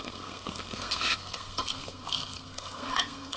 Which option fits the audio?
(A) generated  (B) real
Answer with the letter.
A